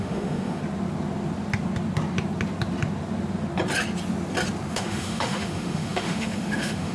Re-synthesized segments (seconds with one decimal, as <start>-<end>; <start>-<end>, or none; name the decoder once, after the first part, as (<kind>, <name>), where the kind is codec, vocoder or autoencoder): 0.0-0.6 (autoencoder, DAC-VAE); 4.7-6.9